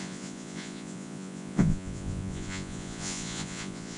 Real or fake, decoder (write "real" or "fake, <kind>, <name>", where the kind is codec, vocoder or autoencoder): fake, vocoder, Vocos